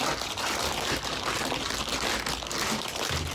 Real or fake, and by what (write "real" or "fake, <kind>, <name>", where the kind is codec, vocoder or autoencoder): real